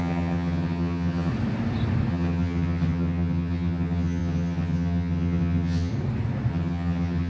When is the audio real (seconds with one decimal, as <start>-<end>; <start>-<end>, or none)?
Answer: 1.3-2.1; 5.9-6.5